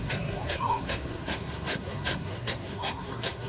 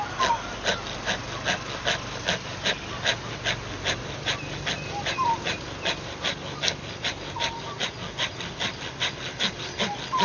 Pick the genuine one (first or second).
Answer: second